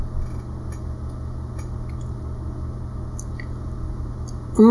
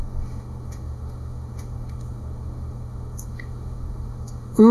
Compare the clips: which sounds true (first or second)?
first